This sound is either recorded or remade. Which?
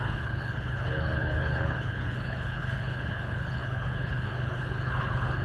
remade